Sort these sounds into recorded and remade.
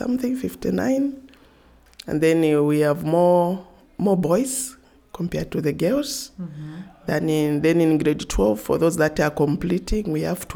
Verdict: recorded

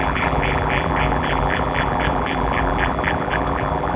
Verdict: remade